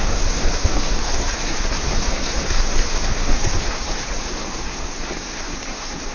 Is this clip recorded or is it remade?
remade